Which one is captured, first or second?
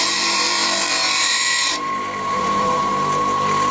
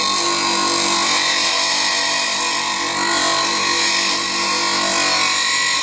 second